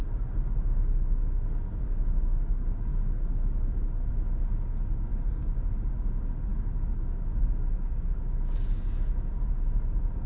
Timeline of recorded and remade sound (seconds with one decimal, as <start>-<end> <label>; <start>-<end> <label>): 0.0-10.3 recorded